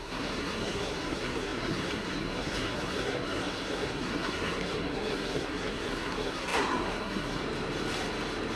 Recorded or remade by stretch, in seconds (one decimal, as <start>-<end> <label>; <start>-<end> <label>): 0.0-7.4 remade; 7.4-8.6 recorded